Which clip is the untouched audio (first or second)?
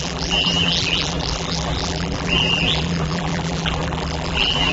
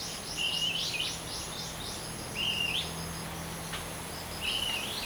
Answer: second